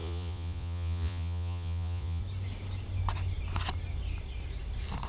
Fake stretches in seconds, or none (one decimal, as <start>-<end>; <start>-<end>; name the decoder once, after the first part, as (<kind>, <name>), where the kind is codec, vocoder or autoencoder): 0.0-2.2 (vocoder, Vocos)